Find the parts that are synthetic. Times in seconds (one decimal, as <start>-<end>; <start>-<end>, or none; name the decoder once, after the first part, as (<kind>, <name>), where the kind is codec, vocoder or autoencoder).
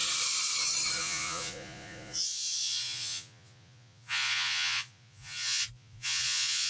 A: 1.0-6.7 (vocoder, Vocos)